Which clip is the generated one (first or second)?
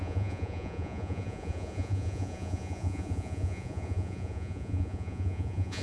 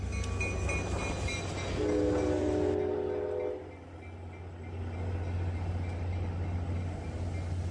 first